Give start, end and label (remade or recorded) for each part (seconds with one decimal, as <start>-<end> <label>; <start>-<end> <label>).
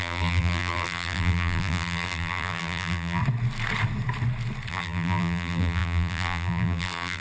0.0-3.2 remade; 3.2-4.7 recorded; 4.7-7.2 remade